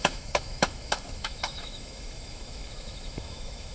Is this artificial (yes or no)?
yes